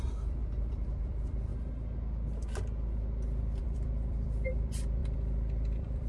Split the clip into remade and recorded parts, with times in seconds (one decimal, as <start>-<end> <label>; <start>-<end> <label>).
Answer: 0.0-1.5 remade; 1.5-3.6 recorded; 3.6-6.1 remade